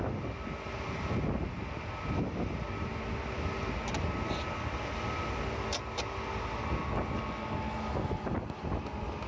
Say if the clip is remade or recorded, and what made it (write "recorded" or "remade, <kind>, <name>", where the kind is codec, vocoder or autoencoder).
recorded